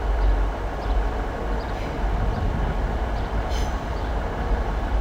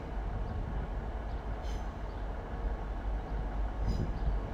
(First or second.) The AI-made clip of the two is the first